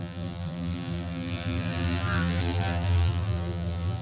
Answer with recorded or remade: remade